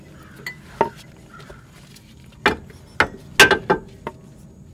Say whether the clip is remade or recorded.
recorded